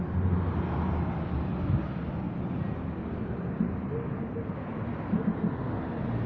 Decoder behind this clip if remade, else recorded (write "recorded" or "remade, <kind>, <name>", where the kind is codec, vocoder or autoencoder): recorded